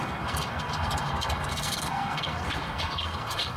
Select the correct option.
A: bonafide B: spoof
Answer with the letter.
B